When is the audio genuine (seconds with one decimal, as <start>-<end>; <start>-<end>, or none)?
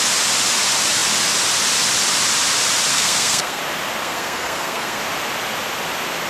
0.0-2.9; 3.6-4.0; 5.0-6.3